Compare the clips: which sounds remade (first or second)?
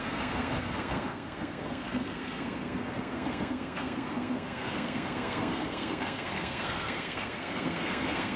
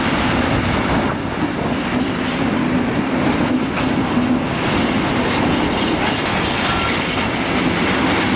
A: first